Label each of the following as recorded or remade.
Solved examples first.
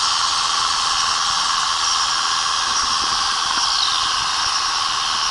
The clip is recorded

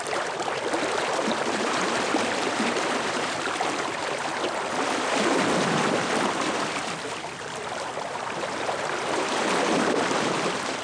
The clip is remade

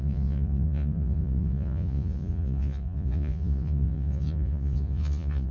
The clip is remade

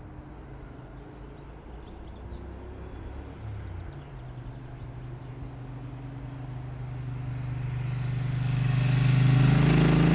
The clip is recorded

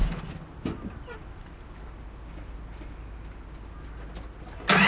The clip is recorded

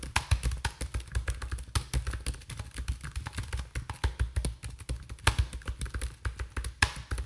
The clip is recorded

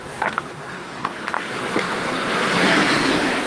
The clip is remade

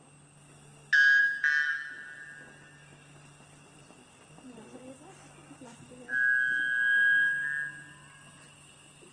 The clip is recorded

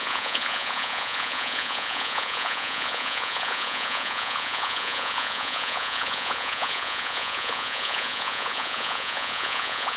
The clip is remade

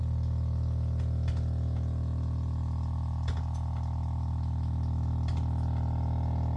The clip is recorded